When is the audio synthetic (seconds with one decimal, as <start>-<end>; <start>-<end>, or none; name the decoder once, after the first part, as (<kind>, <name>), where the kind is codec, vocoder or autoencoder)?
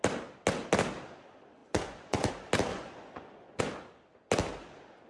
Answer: 1.6-2.3 (vocoder, Vocos); 2.7-3.6